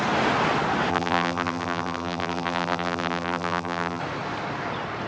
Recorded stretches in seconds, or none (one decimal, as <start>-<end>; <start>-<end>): 0.0-0.9; 4.0-5.1